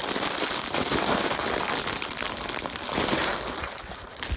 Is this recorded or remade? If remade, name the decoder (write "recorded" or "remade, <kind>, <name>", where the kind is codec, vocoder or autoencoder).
recorded